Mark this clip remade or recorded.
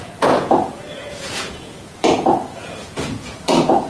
remade